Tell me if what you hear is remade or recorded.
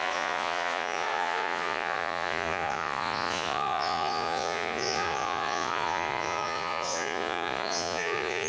remade